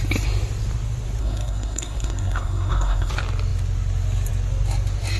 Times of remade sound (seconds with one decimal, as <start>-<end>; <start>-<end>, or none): 1.2-3.1